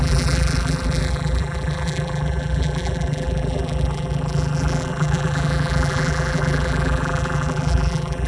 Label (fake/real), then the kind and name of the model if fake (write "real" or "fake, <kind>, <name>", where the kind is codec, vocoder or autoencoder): fake, vocoder, BigVGAN v2